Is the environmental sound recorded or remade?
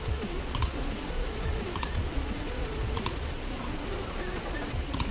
remade